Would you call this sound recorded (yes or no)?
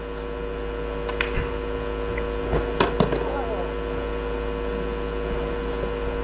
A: yes